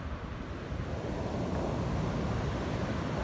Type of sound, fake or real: real